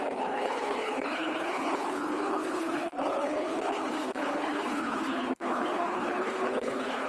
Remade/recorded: remade